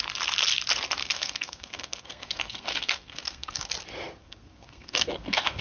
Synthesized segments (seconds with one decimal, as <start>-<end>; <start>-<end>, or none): 1.0-3.7; 4.2-5.6